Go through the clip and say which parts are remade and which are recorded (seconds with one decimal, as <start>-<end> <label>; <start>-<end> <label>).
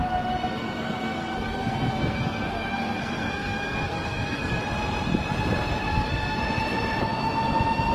0.0-4.6 remade; 4.6-5.9 recorded; 5.9-6.4 remade; 6.4-7.9 recorded